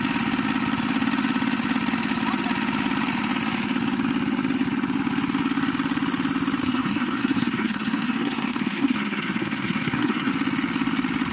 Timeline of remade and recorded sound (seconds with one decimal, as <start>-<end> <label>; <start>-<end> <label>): 0.0-6.6 recorded; 6.6-10.3 remade; 10.3-11.3 recorded

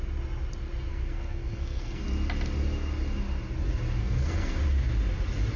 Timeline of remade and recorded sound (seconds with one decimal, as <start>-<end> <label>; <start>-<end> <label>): 0.0-0.9 recorded; 0.9-2.0 remade; 2.0-4.0 recorded; 4.0-4.6 remade; 4.6-5.6 recorded

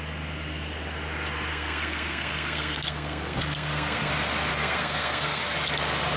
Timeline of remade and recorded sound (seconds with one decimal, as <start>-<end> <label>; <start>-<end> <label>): 0.0-1.5 recorded; 1.5-4.1 remade; 4.1-4.5 recorded; 4.5-5.4 remade; 5.4-6.2 recorded

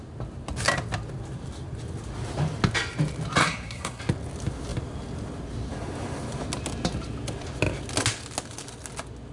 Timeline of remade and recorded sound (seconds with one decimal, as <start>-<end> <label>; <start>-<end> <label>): 0.0-3.4 recorded; 3.4-4.0 remade; 4.0-9.3 recorded